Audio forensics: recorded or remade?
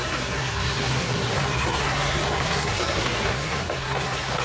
remade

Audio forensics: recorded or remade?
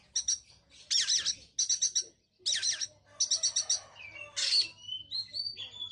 recorded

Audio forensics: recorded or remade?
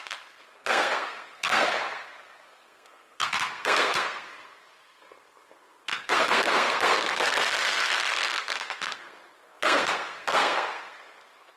remade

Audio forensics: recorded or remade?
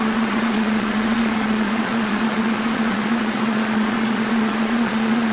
remade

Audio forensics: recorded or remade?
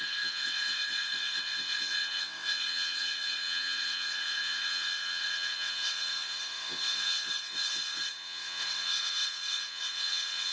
remade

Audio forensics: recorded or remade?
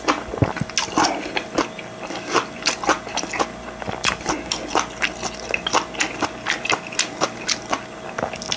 recorded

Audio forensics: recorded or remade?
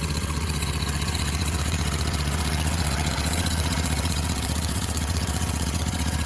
remade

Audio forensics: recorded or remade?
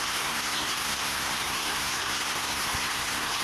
remade